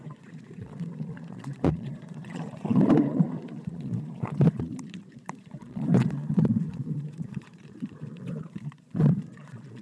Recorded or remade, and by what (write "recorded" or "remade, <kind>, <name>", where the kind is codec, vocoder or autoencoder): remade, vocoder, Vocos